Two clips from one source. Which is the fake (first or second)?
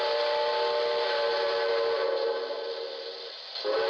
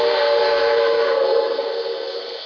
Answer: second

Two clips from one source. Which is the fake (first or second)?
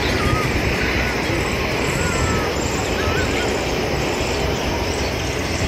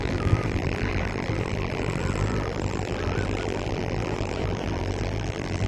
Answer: second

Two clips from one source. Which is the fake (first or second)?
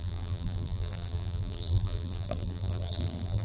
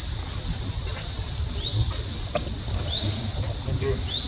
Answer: first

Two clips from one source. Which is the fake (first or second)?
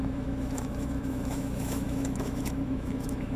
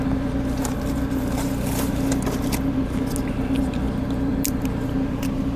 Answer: first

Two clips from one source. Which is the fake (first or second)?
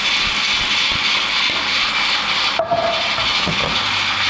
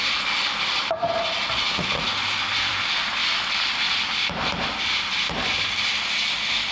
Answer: second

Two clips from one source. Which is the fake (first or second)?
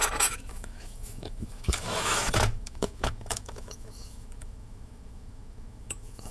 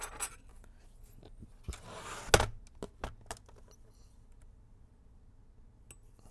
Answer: first